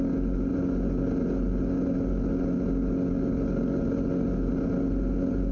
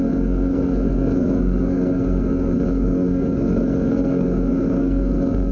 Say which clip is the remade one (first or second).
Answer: second